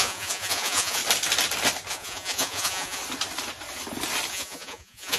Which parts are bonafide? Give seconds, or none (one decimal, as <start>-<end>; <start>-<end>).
1.0-1.9; 3.0-4.3

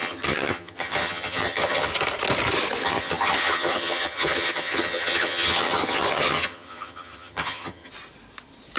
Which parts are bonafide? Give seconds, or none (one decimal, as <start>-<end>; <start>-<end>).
1.9-2.8; 7.9-8.8

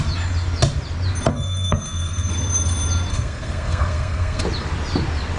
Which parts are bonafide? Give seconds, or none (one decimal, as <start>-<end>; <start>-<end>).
0.0-1.3; 2.3-3.1; 4.4-5.4

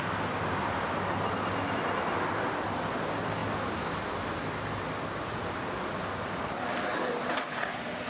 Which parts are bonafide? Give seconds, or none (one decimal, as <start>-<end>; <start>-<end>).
0.0-8.1

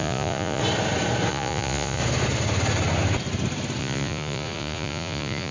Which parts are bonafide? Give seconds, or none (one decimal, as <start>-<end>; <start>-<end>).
0.6-1.3; 2.0-3.8